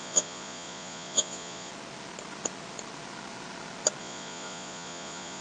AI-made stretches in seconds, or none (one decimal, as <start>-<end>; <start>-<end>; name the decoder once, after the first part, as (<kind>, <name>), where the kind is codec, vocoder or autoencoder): 0.0-1.7 (vocoder, Vocos); 4.0-5.4